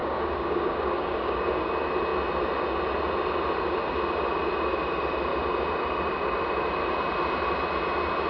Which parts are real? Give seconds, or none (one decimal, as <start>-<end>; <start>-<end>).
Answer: 1.7-8.3